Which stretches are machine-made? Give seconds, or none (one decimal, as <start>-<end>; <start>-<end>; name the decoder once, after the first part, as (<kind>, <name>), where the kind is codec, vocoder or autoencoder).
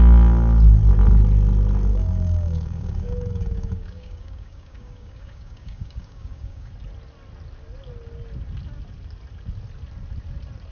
1.9-6.7 (codec, DAC)